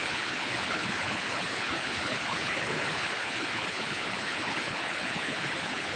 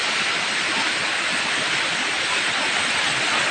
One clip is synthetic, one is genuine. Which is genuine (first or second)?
second